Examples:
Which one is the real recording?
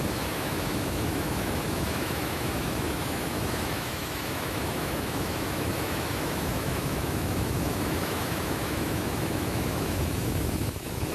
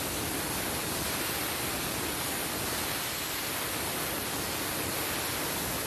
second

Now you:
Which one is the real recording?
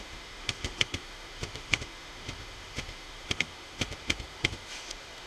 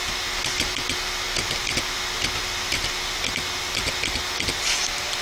second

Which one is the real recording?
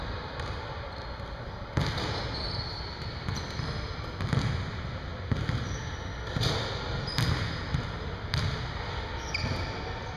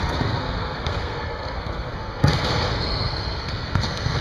first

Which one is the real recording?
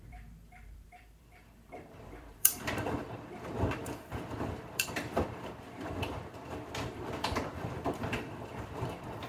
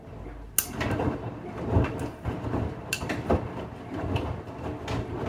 second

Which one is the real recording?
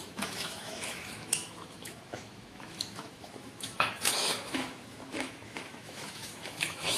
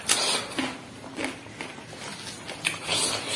second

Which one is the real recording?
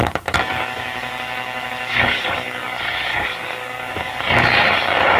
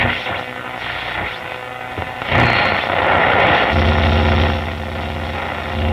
second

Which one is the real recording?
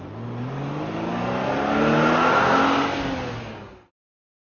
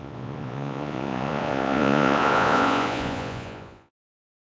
first